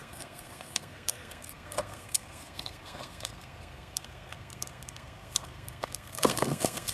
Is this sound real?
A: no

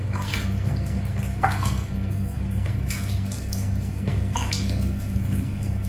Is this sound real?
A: no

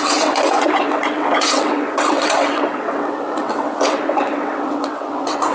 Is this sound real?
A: no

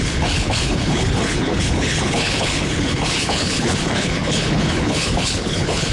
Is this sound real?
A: no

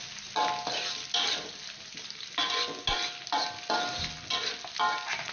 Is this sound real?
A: yes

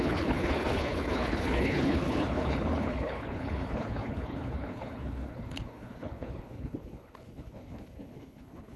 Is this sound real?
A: no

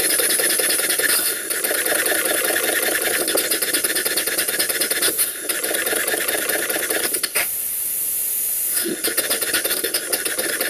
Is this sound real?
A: no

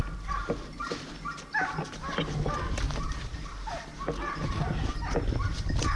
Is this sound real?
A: yes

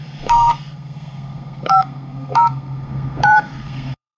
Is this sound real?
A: no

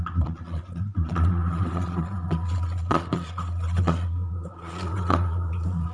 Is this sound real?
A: no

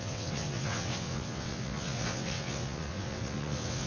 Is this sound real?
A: no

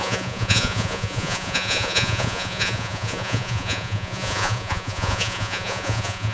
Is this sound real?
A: no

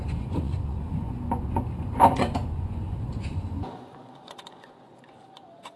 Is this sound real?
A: no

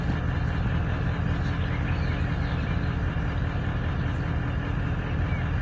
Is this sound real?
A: yes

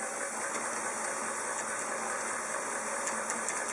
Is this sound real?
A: yes